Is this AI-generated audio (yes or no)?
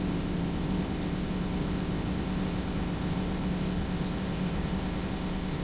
yes